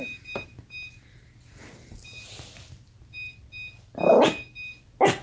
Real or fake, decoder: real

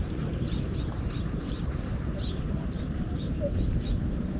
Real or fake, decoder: fake, vocoder, BigVGAN v2